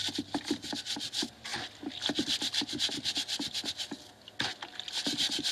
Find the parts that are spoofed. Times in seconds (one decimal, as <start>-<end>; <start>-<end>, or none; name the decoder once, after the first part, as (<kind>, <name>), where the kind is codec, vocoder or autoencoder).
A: none